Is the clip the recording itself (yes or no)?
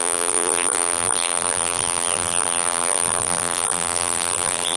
no